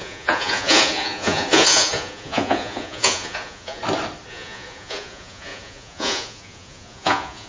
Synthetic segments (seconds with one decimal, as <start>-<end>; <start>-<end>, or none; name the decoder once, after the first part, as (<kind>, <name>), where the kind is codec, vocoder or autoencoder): 0.0-3.8 (vocoder, Vocos); 4.3-7.5